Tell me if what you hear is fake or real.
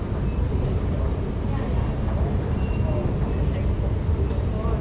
real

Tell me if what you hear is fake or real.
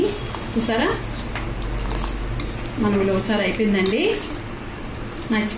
real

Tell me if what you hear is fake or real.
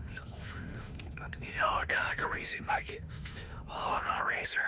fake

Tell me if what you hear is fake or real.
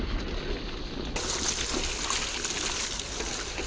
real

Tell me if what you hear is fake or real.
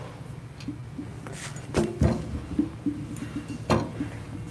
real